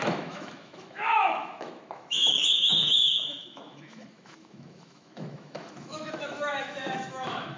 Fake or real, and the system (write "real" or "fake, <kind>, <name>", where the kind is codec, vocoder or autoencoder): fake, autoencoder, DAC-VAE